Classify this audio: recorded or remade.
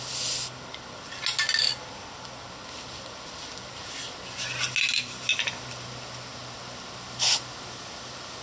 recorded